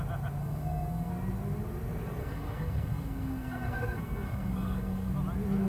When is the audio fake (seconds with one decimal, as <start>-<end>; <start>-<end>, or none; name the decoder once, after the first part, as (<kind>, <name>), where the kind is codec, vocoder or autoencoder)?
0.4-1.1 (codec, SNAC); 2.2-5.1